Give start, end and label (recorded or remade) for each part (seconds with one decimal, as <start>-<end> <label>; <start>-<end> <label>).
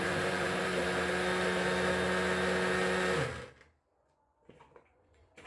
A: 0.0-0.7 remade; 0.7-4.0 recorded; 4.0-5.5 remade